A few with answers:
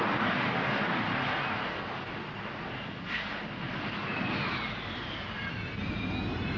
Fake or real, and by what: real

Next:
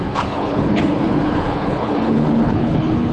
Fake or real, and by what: fake, codec, HILCodec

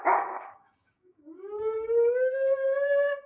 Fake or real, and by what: fake, codec, DAC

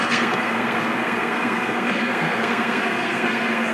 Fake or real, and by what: fake, codec, SNAC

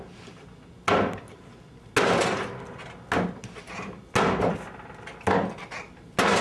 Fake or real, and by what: real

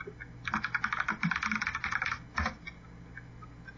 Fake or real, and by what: real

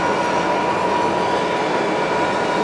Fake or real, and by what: real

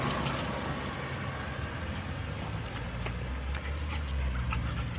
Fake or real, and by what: real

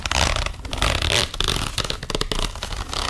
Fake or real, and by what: real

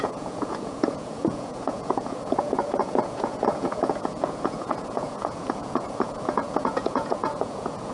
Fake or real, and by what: fake, vocoder, Vocos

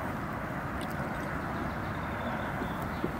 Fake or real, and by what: real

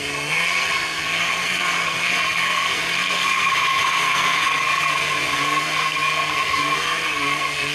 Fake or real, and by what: fake, codec, SNAC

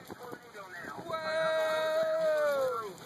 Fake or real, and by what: real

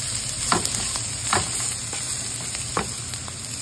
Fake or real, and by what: real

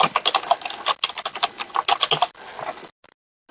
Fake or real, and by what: real